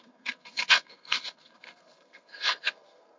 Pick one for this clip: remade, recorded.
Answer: remade